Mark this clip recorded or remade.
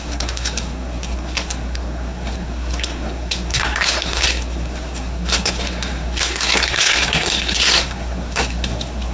remade